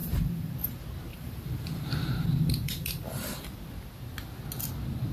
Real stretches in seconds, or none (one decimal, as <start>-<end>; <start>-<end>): 0.5-1.1; 3.5-5.1